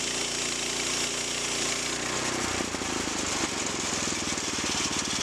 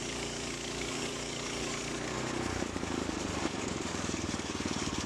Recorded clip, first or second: first